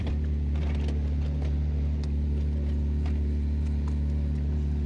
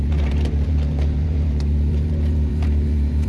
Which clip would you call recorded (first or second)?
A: first